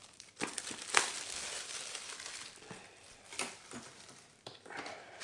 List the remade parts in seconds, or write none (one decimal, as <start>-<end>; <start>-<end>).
0.0-5.2